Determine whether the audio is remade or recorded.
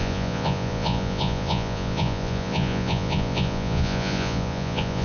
remade